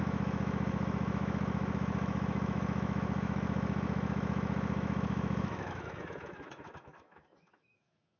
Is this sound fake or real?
fake